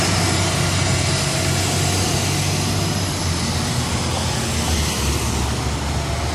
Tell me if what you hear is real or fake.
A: real